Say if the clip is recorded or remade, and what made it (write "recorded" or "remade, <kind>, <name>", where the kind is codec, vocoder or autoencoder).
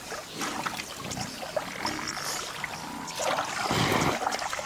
recorded